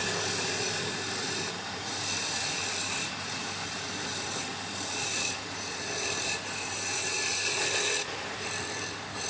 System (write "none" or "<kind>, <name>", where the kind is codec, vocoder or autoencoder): none